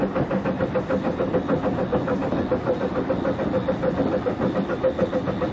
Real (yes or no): yes